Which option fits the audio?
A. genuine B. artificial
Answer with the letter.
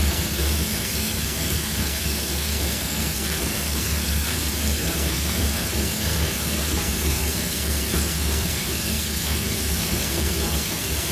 B